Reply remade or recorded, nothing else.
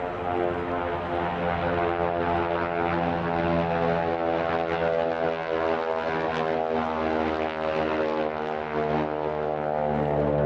recorded